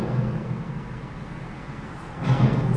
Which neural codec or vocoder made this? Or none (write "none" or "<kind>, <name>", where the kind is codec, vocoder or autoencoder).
codec, SNAC